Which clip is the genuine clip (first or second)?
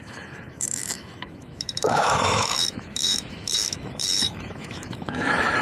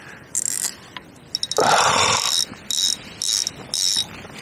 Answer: second